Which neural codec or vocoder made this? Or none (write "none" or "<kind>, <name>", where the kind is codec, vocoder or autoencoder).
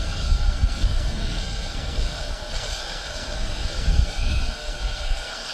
codec, SNAC